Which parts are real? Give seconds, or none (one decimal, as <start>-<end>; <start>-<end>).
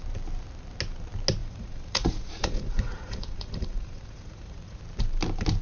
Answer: 0.0-1.4; 4.8-5.6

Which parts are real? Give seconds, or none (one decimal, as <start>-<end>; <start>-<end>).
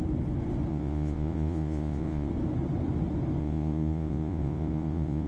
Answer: 0.0-0.7; 2.3-3.4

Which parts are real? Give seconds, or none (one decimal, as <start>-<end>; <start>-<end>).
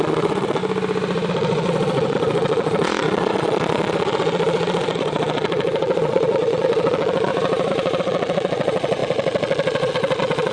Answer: 0.6-1.3; 7.3-8.0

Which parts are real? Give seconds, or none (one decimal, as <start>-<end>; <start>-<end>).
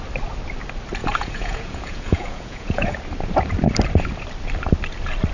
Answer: 0.0-1.0; 3.0-5.3